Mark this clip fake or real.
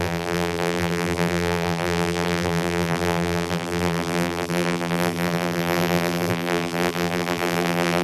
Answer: fake